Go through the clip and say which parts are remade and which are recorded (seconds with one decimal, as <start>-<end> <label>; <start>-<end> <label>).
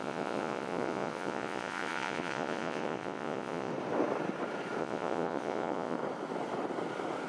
0.0-3.7 remade; 3.7-4.8 recorded; 4.8-6.0 remade; 6.0-7.3 recorded